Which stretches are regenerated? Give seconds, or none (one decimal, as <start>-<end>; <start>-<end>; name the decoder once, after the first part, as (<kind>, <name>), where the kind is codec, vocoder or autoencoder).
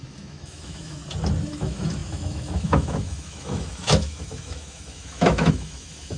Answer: 0.0-1.0 (autoencoder, DAC-VAE); 1.5-6.2